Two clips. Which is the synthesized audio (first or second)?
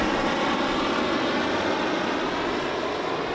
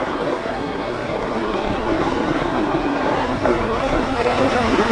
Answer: second